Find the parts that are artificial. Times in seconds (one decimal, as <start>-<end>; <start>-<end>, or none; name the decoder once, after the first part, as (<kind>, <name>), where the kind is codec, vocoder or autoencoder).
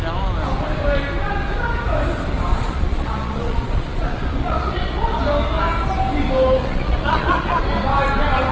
2.5-5.2 (vocoder, Vocos); 6.6-7.6